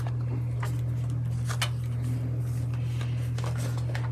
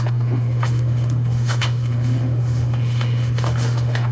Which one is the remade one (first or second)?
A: second